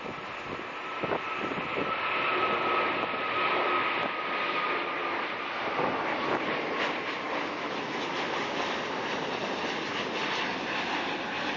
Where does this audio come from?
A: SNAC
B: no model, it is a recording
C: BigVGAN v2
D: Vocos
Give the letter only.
B